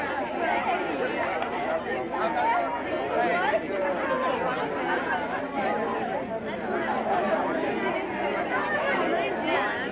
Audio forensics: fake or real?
real